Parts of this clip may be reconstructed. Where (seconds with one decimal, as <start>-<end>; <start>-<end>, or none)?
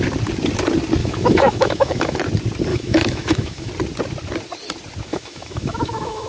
1.0-2.2; 2.7-3.7; 5.1-6.3